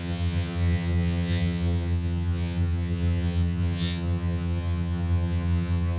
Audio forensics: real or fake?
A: fake